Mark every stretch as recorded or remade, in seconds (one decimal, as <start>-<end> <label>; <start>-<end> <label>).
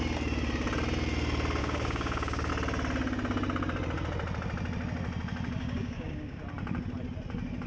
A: 0.0-1.6 recorded; 1.6-2.5 remade; 2.5-5.6 recorded; 5.6-6.4 remade; 6.4-7.7 recorded